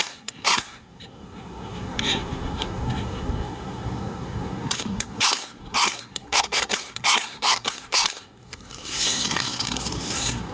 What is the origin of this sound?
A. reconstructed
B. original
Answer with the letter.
A